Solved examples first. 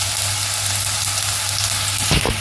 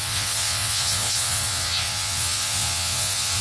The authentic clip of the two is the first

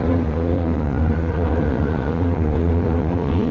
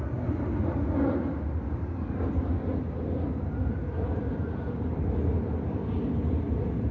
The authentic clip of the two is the second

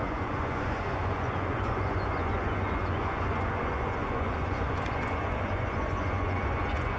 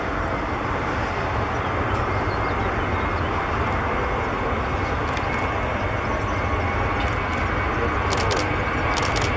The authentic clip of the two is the second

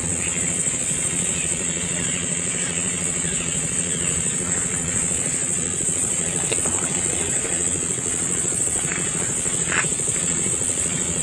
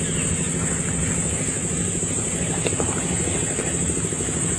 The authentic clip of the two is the second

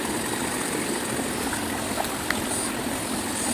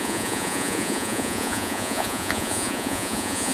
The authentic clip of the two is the first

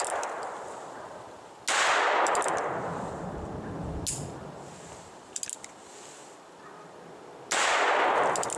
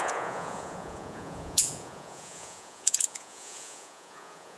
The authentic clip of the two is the first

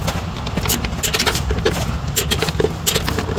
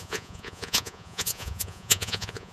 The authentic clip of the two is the first